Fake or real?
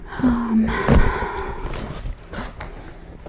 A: real